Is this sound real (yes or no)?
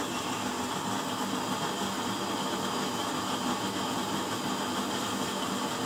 yes